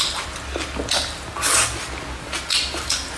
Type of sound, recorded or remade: recorded